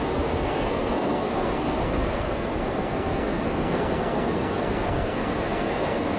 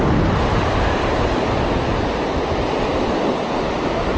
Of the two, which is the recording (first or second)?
second